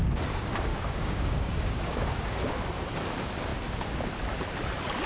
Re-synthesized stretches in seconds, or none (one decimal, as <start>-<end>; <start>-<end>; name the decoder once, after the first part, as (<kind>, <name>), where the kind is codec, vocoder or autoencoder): 0.7-2.5 (codec, DAC)